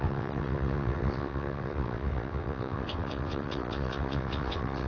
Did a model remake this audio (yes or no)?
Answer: yes